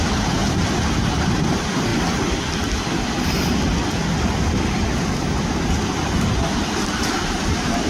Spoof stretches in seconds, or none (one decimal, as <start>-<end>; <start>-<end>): 0.0-0.4; 1.0-1.9; 6.6-7.9